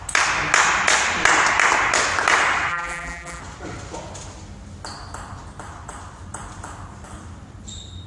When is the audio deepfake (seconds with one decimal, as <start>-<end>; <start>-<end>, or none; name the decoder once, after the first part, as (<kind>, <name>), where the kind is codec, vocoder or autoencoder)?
2.7-3.4 (vocoder, BigVGAN v2)